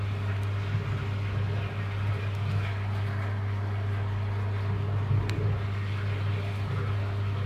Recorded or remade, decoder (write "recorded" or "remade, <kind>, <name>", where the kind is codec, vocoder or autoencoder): recorded